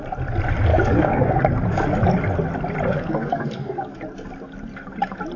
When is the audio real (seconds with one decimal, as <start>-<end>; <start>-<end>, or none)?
0.0-0.7; 1.4-2.9; 4.0-5.4

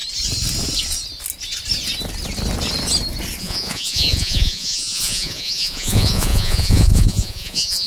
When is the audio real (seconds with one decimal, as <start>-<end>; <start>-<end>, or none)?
0.0-3.4

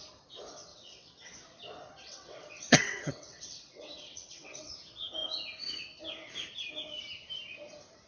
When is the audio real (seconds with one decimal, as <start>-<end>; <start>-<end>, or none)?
0.0-0.7; 1.3-2.0; 4.7-8.1

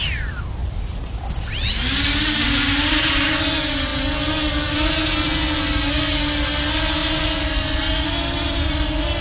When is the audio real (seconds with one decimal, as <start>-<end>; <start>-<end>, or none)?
0.0-9.2

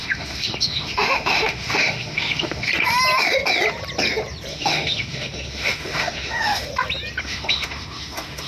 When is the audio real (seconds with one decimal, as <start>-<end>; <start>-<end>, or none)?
2.7-4.5; 6.7-7.2

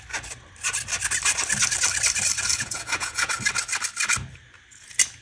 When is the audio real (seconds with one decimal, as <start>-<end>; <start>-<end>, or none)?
0.0-2.5; 3.3-5.2

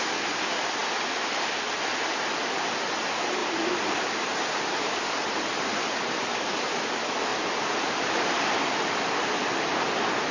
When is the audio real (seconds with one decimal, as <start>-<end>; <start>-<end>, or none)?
0.0-3.4; 4.6-7.3; 8.6-10.3

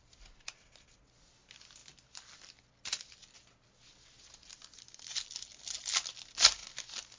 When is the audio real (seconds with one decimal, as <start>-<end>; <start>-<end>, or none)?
0.0-7.2